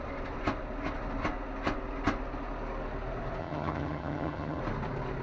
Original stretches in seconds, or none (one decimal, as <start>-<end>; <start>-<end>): 0.0-3.4; 4.6-5.2